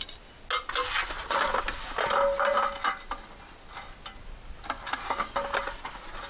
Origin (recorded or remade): recorded